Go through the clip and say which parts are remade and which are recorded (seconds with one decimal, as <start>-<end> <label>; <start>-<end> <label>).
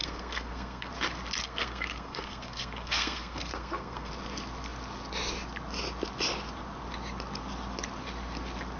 0.0-0.9 remade; 0.9-1.4 recorded; 1.4-4.1 remade; 4.1-8.8 recorded